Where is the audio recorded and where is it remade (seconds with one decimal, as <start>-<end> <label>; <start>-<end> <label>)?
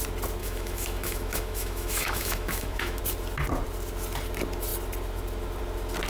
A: 0.0-0.4 recorded; 0.4-3.0 remade; 3.0-6.1 recorded